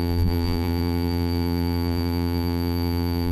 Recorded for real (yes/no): no